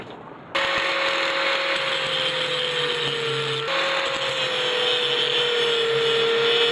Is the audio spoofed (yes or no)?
no